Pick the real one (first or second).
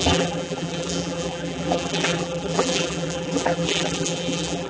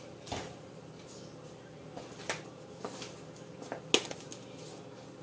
second